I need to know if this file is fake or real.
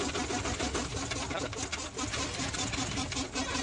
real